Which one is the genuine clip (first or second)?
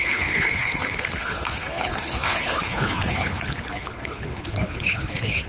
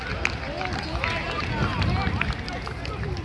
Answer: second